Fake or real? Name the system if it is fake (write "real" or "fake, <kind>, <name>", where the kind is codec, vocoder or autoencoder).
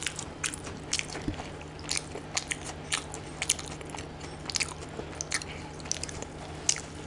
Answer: real